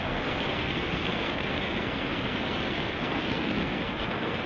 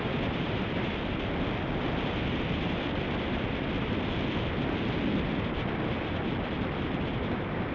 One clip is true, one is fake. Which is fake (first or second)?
first